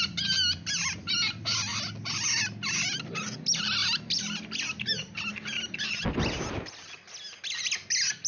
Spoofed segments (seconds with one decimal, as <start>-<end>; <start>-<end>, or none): none